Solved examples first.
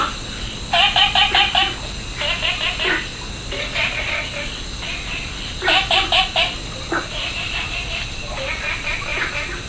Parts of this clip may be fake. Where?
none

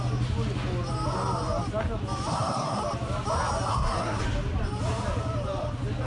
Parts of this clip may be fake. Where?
2.3-2.8; 3.7-4.2